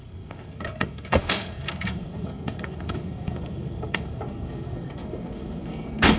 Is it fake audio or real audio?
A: fake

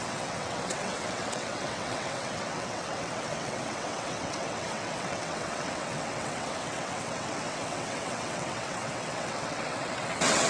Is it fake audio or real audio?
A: fake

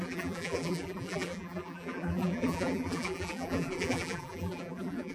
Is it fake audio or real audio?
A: fake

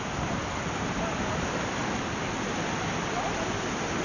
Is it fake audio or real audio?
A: real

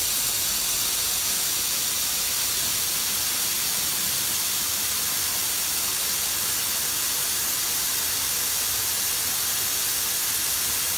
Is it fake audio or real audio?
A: real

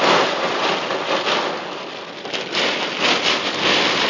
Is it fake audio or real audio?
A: real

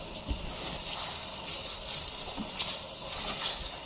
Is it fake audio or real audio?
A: real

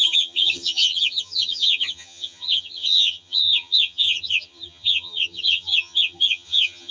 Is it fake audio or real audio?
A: fake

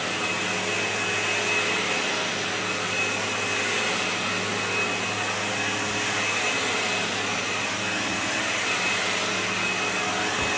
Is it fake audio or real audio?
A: real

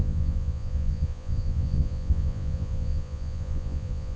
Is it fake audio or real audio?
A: fake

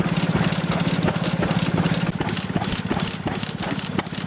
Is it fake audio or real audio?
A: real